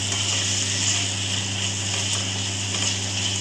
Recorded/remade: recorded